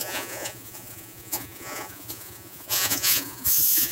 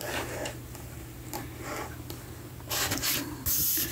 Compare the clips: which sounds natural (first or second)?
second